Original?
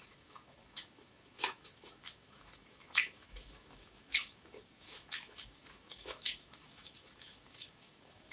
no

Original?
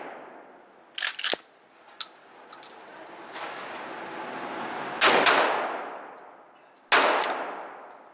yes